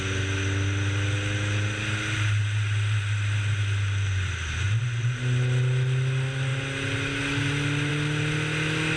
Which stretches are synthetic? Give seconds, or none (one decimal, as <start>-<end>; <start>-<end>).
none

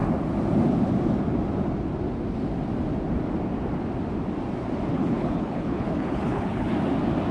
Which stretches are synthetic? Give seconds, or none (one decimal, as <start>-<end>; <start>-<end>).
4.9-6.7

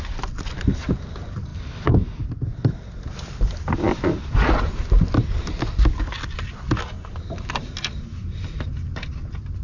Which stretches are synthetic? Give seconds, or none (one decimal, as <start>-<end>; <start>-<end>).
none